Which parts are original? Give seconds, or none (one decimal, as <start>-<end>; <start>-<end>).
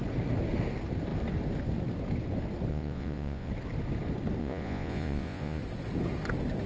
0.0-2.7; 3.5-4.4; 5.6-6.7